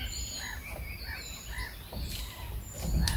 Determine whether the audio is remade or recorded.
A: recorded